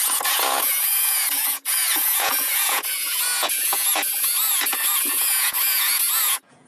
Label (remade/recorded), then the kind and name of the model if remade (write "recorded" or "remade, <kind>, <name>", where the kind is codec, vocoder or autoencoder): remade, vocoder, Vocos